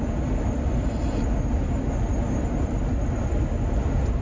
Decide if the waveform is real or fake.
real